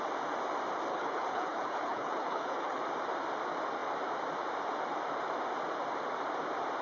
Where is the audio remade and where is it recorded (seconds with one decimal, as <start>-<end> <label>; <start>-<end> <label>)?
0.0-0.9 recorded; 0.9-2.8 remade; 2.8-6.8 recorded